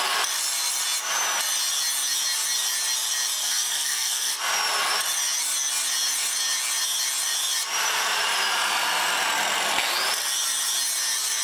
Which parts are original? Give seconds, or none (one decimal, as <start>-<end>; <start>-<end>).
0.0-3.4; 4.4-11.4

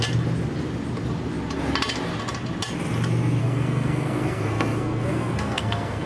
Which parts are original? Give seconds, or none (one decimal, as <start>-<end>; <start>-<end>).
0.0-3.4

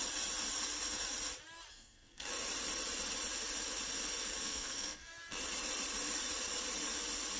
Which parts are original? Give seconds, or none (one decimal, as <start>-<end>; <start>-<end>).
0.0-1.7; 2.3-4.4; 5.1-7.4

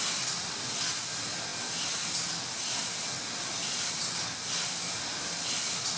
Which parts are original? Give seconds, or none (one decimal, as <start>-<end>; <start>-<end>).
0.0-6.0